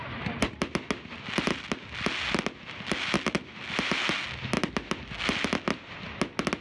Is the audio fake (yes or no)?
no